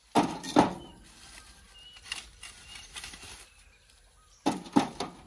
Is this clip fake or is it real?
real